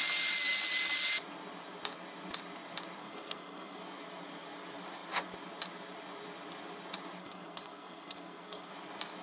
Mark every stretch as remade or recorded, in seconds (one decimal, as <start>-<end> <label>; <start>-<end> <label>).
0.0-3.0 recorded; 3.0-3.8 remade; 3.8-7.2 recorded; 7.2-8.7 remade; 8.7-9.2 recorded